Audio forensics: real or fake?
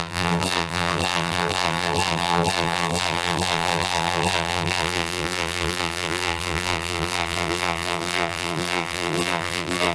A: fake